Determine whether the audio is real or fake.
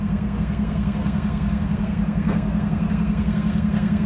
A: fake